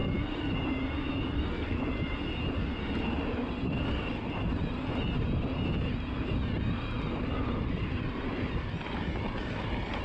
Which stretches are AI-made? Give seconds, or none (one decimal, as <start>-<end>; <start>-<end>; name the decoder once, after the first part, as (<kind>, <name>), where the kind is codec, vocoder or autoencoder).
none